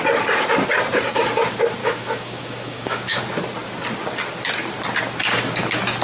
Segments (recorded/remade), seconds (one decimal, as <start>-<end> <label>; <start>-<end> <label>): 0.0-1.8 recorded; 1.8-3.2 remade; 3.2-6.0 recorded

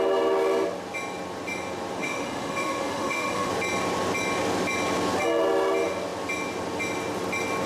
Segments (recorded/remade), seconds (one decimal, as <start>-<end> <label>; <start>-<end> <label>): 0.0-2.0 recorded; 2.0-3.5 remade; 3.5-7.7 recorded

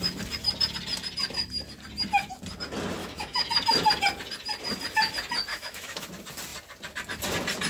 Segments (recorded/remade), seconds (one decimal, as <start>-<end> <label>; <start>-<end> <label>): 0.0-3.0 recorded; 3.0-3.5 remade; 3.5-5.5 recorded; 5.5-6.1 remade; 6.1-7.7 recorded

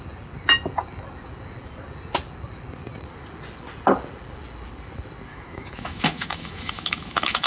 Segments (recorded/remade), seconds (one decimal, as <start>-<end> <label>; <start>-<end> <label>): 0.0-5.3 recorded; 5.3-7.5 remade

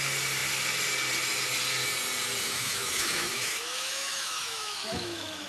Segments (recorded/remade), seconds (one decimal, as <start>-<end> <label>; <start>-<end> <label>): 0.0-2.4 recorded; 2.4-5.5 remade

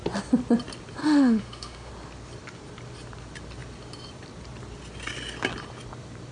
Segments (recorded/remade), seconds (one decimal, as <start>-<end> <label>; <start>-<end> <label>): 0.0-1.0 recorded; 1.0-1.9 remade; 1.9-6.3 recorded

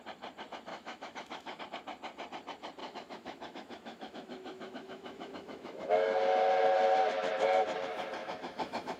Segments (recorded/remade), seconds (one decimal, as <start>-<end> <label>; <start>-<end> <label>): 0.0-0.7 recorded; 0.7-1.6 remade; 1.6-2.8 recorded; 2.8-6.2 remade; 6.2-8.2 recorded; 8.2-9.0 remade